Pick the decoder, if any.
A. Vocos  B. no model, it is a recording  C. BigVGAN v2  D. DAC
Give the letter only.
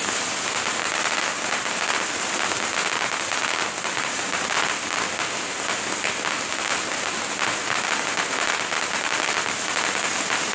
B